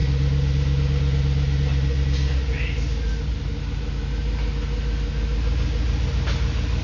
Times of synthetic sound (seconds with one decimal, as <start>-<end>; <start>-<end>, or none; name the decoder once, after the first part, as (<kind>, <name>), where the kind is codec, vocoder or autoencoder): none